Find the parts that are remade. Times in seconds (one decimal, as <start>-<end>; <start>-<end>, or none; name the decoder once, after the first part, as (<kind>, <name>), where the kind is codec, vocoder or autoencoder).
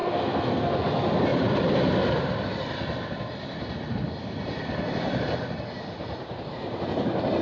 0.0-0.6 (codec, SNAC)